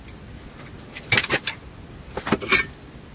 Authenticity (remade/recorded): recorded